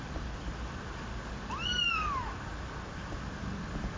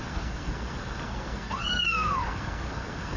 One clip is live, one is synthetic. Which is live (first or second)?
first